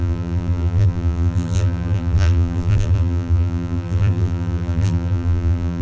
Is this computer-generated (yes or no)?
yes